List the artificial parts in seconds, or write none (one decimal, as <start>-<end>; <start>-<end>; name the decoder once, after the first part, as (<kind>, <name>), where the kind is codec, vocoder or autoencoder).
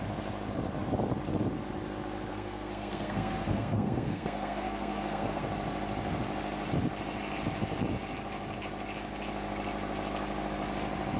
2.3-5.5 (codec, SNAC)